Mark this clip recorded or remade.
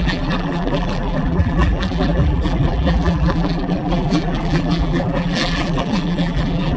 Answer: remade